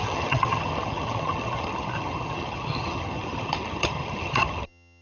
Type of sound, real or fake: fake